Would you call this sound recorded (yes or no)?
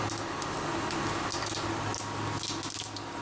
yes